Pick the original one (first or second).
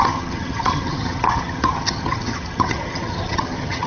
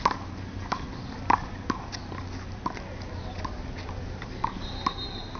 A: second